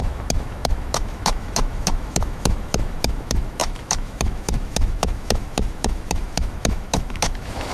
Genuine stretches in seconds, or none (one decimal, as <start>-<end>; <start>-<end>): none